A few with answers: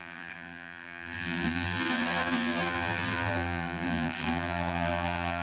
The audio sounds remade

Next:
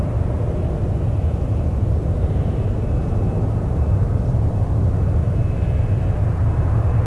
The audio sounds recorded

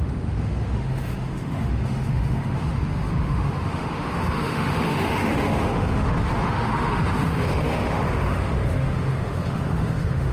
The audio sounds remade